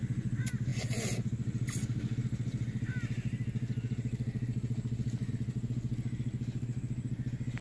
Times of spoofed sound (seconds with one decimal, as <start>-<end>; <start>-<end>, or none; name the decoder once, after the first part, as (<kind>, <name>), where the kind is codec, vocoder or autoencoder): none